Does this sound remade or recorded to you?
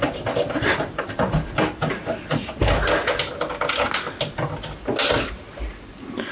recorded